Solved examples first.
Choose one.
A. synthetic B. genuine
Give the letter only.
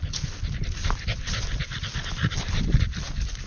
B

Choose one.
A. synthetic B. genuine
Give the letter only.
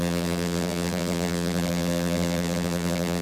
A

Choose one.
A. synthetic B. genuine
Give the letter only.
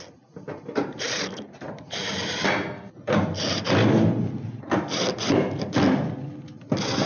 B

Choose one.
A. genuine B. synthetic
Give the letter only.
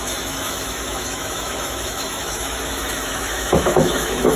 B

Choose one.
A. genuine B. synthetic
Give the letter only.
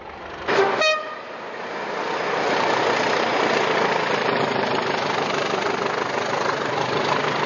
A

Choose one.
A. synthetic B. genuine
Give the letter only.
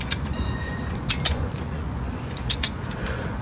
A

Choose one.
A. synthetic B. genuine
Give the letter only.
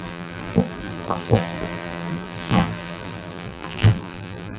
A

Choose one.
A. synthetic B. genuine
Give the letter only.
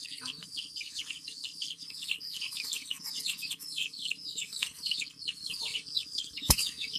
A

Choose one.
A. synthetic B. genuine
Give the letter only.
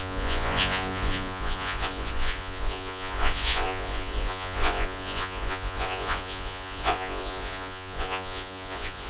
A